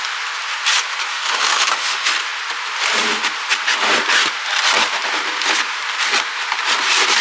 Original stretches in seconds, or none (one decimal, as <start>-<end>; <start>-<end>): 0.0-1.1; 2.1-7.2